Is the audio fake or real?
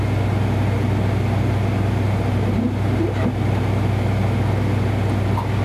real